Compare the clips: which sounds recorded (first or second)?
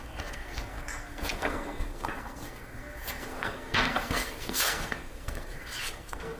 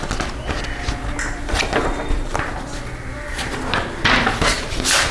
second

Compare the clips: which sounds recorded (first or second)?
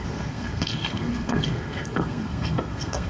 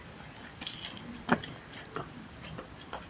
second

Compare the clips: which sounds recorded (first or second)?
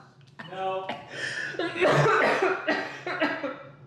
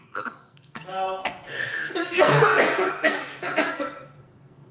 first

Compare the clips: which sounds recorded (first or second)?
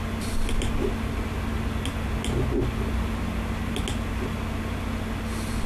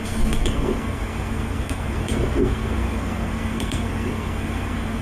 first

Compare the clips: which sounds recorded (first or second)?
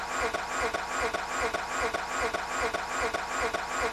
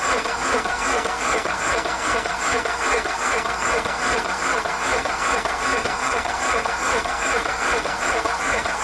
first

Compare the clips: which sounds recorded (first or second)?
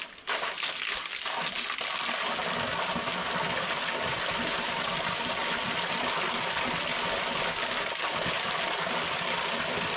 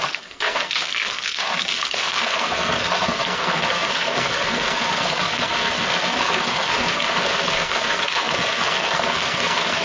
first